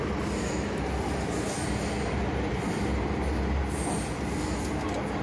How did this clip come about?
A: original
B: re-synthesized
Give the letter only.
A